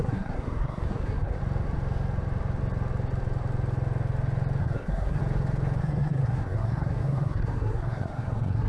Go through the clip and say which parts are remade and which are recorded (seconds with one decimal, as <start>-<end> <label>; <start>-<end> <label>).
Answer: 0.0-1.4 remade; 1.4-4.6 recorded; 4.6-5.2 remade; 5.2-5.8 recorded; 5.8-8.7 remade